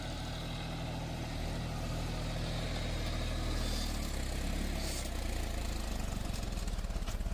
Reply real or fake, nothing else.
real